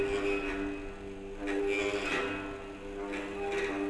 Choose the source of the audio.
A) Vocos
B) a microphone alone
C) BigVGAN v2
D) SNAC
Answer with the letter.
B